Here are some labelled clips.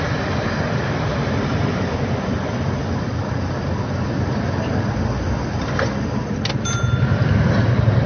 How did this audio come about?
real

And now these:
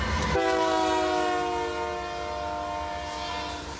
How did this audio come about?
real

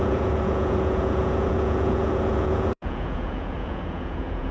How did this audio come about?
fake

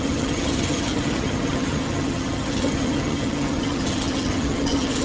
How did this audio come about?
fake